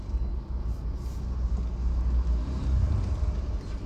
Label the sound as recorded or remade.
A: recorded